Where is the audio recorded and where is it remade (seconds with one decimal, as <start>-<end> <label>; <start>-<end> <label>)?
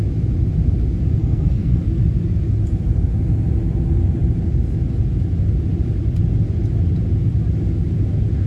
0.0-1.2 recorded; 1.2-1.8 remade; 1.8-8.5 recorded